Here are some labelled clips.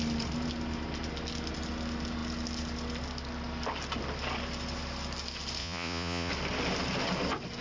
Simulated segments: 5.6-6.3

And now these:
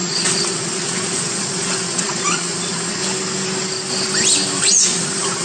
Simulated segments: 0.0-3.0; 4.6-5.4

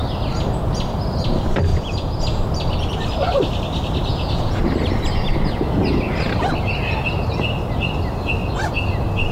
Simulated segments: 1.7-2.2; 4.1-4.6

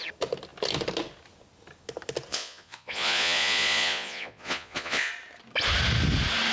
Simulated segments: 2.3-5.1

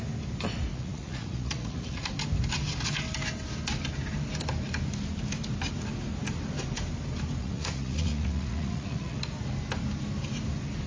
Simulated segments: 0.7-2.1; 7.4-9.2